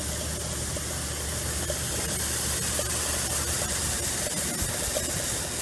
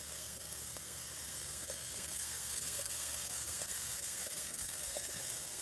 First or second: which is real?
first